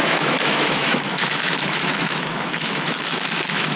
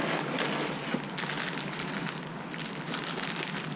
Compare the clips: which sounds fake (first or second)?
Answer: first